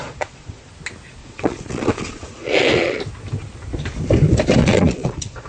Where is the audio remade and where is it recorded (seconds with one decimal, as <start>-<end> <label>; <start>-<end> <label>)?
0.0-0.7 remade; 0.7-1.2 recorded; 1.2-3.0 remade; 3.0-4.6 recorded; 4.6-5.5 remade